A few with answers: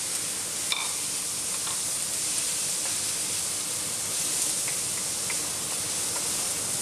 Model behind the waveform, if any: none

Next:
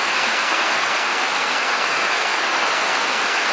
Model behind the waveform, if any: codec, SNAC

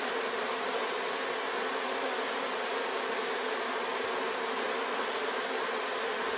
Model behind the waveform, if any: none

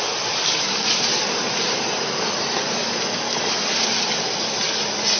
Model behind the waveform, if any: none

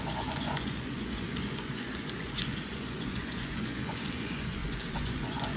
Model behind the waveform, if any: vocoder, Vocos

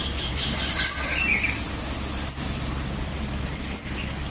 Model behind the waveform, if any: none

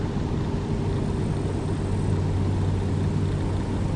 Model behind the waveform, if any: none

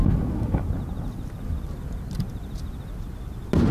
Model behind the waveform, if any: none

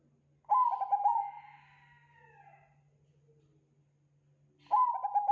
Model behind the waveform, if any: none